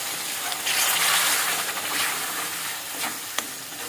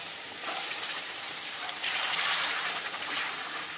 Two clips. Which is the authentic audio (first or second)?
first